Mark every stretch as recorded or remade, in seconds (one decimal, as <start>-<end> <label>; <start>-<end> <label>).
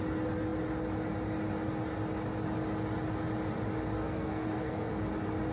0.0-4.0 recorded; 4.0-5.0 remade; 5.0-5.5 recorded